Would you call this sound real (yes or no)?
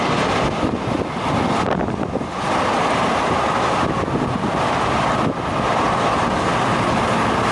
yes